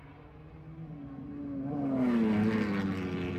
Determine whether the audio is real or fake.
real